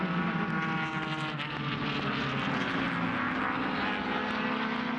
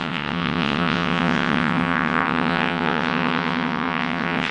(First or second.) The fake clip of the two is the second